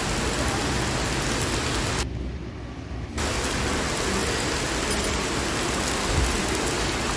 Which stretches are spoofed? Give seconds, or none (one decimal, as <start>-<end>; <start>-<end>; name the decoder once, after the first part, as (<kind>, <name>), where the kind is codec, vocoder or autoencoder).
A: none